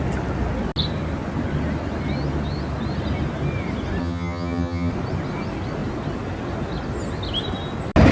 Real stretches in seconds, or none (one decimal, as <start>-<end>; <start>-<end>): 0.0-4.0; 4.9-8.1